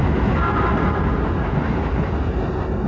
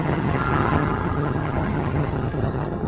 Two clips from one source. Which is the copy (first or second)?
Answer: second